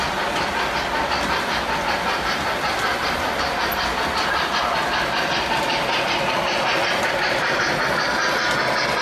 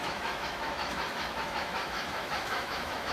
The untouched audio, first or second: first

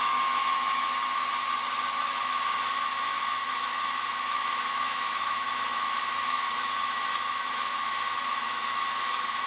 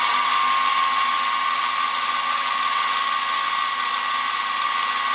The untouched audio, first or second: second